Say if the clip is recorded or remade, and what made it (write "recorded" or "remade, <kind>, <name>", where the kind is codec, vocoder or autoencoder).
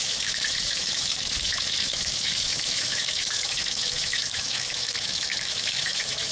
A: remade, autoencoder, DAC-VAE